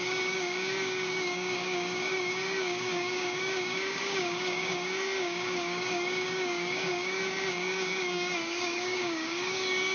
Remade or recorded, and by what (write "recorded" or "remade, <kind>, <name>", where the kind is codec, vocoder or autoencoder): remade, codec, DAC